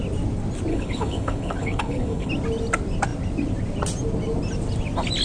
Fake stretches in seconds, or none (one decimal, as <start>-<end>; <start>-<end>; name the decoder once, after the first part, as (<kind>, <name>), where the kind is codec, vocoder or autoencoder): 0.7-2.3 (codec, HILCodec)